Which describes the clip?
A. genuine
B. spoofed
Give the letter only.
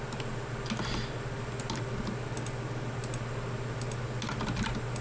A